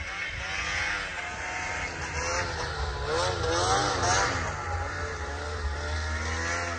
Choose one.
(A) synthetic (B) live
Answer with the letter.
B